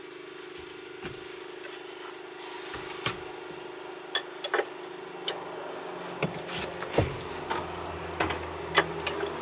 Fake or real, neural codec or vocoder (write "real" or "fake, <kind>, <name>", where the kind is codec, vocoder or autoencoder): real